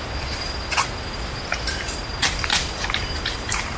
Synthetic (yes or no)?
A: no